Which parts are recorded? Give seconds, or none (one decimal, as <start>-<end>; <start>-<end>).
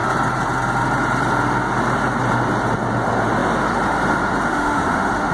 0.0-4.5